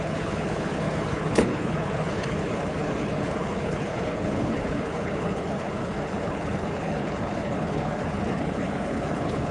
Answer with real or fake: fake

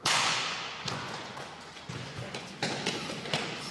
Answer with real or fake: fake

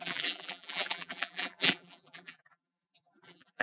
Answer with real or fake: fake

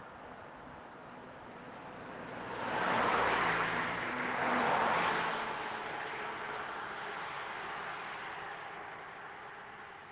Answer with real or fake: real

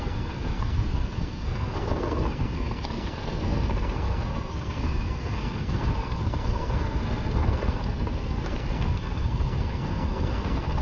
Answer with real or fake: fake